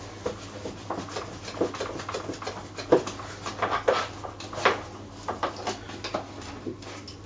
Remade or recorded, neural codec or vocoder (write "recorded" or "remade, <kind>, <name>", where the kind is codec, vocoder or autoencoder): recorded